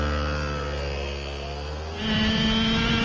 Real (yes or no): yes